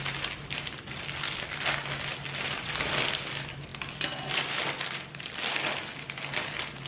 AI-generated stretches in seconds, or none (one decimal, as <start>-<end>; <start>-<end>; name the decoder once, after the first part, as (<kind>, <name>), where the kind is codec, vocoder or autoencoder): none